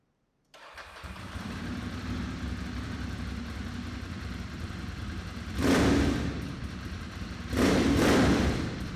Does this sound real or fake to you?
fake